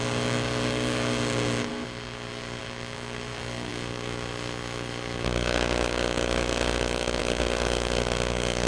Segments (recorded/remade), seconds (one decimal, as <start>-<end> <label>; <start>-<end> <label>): 0.0-8.7 remade